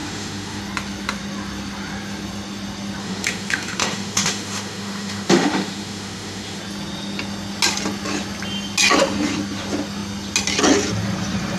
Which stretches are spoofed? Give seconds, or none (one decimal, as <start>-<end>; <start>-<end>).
0.0-0.6; 3.0-6.6